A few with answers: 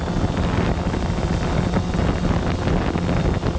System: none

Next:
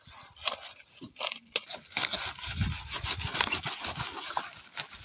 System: none